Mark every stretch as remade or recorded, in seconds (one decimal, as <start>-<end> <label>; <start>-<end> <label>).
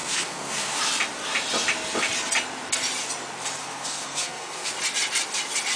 0.0-0.8 remade; 0.8-3.6 recorded; 3.6-4.7 remade; 4.7-5.8 recorded